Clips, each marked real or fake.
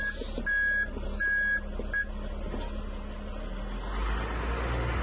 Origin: real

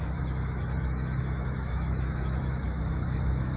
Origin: fake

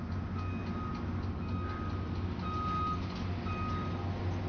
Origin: real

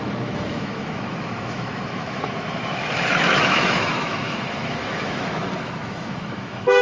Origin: fake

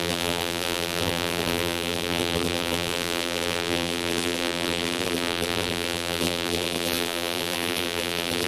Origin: fake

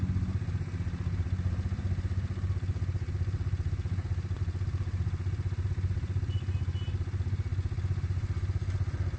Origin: real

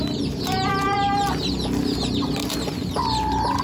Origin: real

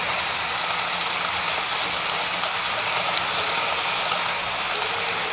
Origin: real